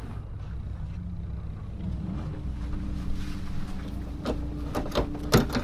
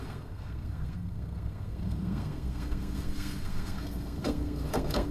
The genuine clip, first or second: first